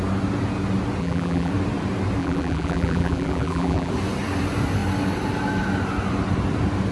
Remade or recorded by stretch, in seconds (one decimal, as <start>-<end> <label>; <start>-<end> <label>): 0.0-1.0 recorded; 1.0-1.5 remade; 1.5-2.2 recorded; 2.2-3.9 remade; 3.9-6.9 recorded